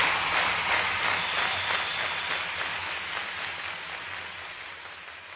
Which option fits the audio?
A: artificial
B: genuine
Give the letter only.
B